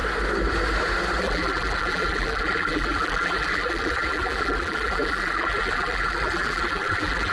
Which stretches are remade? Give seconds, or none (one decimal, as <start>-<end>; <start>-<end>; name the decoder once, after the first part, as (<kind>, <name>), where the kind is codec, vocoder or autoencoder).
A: 1.2-7.3 (vocoder, BigVGAN v2)

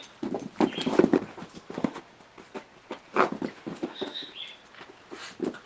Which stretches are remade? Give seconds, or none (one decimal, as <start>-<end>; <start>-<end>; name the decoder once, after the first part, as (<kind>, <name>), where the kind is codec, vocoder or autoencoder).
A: 1.3-2.0 (autoencoder, DAC-VAE); 3.5-4.3

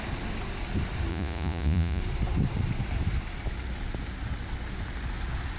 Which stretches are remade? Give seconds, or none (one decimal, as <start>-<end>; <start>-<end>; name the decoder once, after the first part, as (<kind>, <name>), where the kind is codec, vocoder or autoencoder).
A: 1.1-2.0 (vocoder, Vocos)

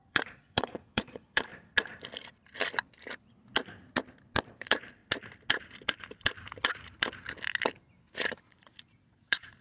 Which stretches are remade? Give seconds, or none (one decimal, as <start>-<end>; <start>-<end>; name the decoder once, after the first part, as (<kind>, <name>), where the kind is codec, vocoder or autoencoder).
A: 0.0-1.5 (vocoder, Vocos); 4.4-5.0; 8.4-9.6